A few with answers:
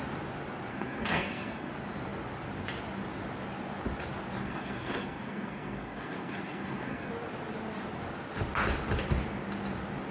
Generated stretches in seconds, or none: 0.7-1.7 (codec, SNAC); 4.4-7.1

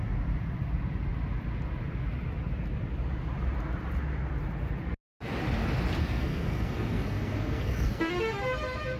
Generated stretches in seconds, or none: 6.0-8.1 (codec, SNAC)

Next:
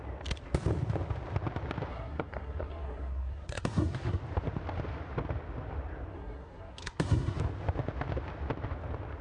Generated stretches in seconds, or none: 1.9-4.2 (codec, SNAC); 6.1-7.4